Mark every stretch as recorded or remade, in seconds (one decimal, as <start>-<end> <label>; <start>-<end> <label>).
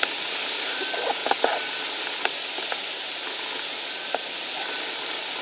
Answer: 0.0-5.4 recorded